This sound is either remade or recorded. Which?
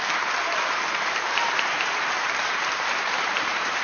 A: remade